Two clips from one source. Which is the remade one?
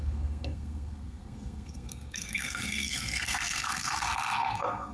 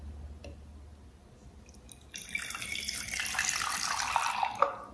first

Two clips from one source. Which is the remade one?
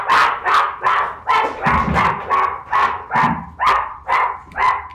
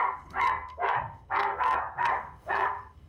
second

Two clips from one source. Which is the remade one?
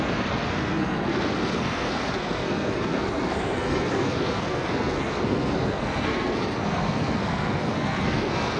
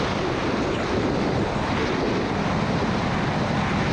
first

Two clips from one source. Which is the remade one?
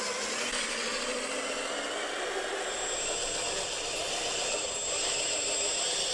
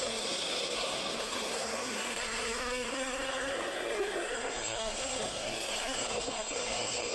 second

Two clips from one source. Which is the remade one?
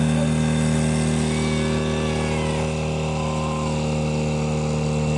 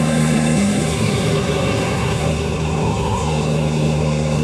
second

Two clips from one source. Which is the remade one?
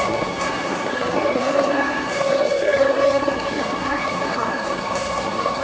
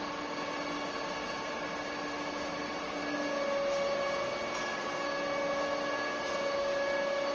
first